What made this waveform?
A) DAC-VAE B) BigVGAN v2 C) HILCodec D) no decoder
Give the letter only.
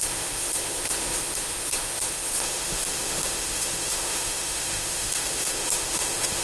A